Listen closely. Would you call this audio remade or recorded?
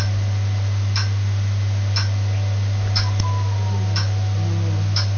recorded